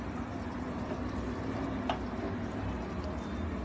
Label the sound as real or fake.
real